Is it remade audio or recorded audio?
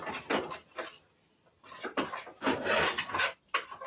recorded